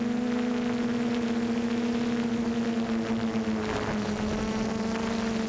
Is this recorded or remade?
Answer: recorded